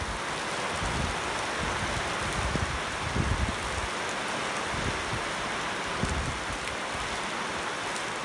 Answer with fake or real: real